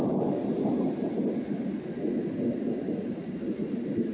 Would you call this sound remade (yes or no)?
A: no